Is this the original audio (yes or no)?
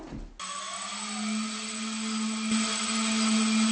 yes